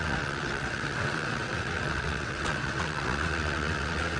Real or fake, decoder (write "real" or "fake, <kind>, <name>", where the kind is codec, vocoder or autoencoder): fake, vocoder, WaveNeXt